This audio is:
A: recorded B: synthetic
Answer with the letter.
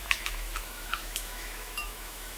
B